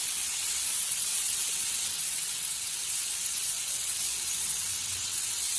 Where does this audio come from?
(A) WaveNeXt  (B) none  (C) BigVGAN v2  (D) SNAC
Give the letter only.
A